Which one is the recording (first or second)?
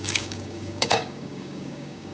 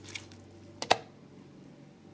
second